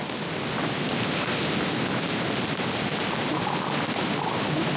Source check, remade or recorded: recorded